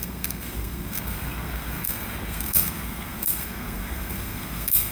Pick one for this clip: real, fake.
fake